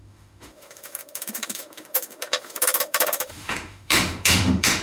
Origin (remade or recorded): remade